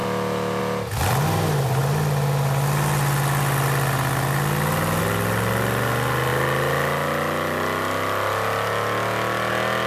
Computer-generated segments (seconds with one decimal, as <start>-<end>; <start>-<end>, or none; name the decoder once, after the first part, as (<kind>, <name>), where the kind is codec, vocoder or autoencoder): none